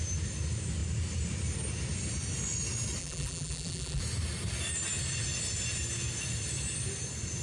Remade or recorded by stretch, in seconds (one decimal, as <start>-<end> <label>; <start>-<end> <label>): 0.0-3.0 recorded; 3.0-4.0 remade; 4.0-7.4 recorded